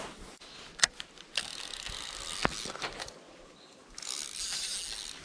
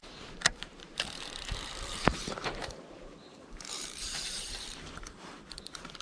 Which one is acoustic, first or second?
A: first